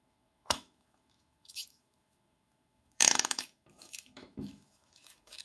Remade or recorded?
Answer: remade